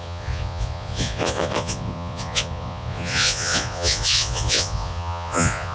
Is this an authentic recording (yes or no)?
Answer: no